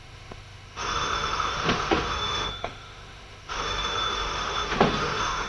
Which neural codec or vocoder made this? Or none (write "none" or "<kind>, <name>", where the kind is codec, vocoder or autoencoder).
autoencoder, DAC-VAE